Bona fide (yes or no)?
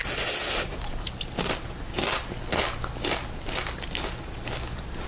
yes